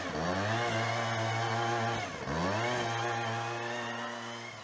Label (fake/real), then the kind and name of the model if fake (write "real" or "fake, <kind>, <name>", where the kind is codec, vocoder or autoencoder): real